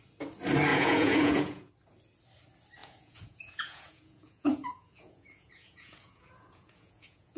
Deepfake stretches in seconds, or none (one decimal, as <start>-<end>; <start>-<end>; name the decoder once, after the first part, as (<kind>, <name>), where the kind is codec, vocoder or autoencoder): 0.7-1.7 (vocoder, Vocos); 2.8-7.4